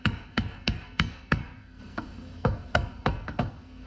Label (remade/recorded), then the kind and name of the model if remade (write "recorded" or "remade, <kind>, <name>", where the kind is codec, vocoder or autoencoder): remade, codec, SNAC